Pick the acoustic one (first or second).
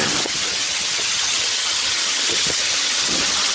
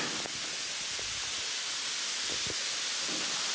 second